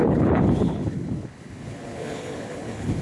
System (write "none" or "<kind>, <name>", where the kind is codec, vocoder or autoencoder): codec, HILCodec